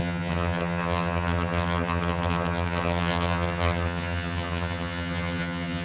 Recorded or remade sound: remade